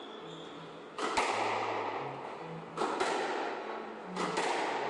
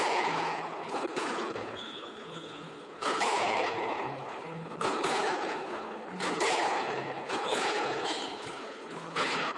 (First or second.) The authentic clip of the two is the first